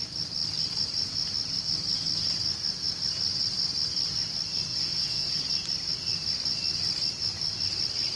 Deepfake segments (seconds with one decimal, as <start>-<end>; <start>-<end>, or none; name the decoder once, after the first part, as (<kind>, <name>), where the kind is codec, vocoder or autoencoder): 4.7-5.4 (vocoder, WaveNeXt)